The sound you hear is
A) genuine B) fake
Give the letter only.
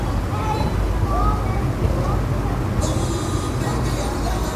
A